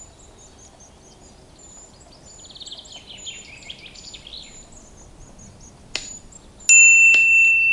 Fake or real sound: real